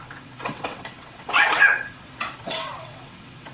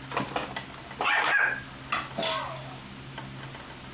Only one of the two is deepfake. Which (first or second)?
first